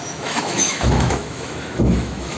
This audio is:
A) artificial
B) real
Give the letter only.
A